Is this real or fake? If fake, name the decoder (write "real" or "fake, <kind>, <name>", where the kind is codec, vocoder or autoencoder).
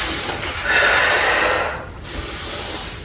real